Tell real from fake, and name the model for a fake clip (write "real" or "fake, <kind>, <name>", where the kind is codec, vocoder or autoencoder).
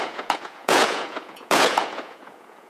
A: fake, vocoder, Vocos